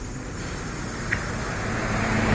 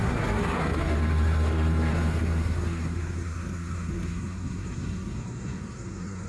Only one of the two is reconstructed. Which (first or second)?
second